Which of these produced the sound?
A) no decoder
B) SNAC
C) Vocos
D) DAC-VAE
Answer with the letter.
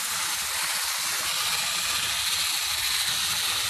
A